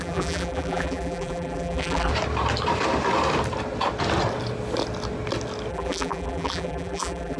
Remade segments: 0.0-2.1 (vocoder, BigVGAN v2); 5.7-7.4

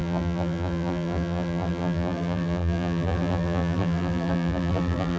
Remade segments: 0.0-5.2 (vocoder, BigVGAN v2)